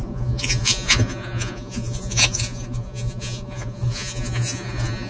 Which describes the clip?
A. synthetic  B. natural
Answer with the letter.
A